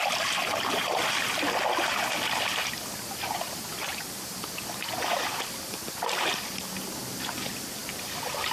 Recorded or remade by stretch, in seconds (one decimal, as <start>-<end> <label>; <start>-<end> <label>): 0.0-0.4 remade; 0.4-4.9 recorded; 4.9-8.5 remade